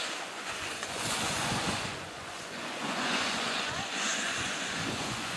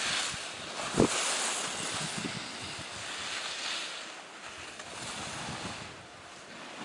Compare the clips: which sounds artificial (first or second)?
first